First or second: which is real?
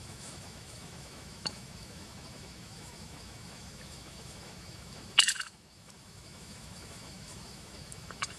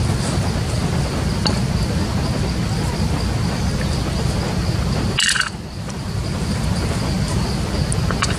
second